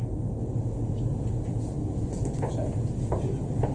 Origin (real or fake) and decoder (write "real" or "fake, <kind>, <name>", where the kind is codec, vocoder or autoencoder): real